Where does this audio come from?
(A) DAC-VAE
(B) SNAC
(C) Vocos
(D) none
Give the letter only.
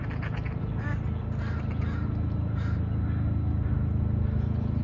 D